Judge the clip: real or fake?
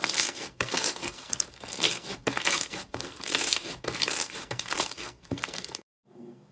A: fake